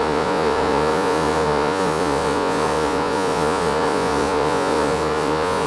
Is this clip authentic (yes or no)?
no